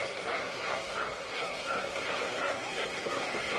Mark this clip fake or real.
fake